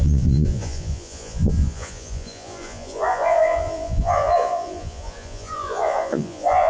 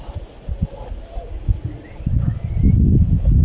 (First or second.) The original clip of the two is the second